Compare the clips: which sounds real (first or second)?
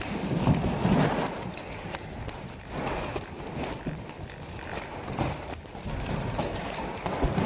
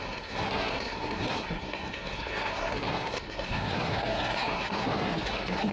first